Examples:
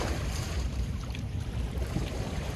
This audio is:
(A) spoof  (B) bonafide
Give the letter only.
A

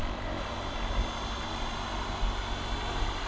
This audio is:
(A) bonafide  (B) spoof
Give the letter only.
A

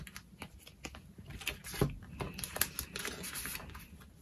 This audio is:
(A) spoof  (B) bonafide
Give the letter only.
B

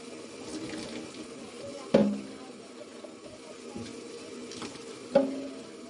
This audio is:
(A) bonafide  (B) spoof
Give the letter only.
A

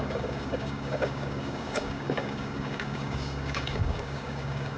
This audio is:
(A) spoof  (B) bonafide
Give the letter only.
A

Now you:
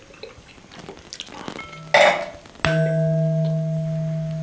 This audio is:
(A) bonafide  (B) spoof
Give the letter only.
A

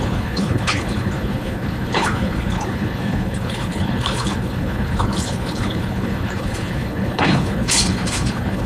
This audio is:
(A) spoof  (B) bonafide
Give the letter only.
A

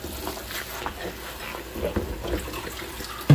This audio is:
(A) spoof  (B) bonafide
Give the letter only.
B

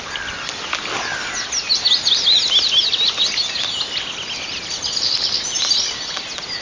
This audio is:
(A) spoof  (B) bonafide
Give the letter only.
B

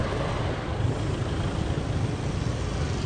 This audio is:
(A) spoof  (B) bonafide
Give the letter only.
B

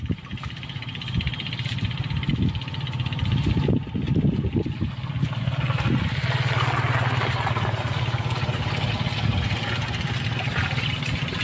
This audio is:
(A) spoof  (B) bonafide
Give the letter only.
B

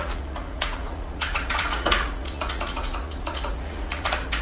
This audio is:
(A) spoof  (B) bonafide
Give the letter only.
A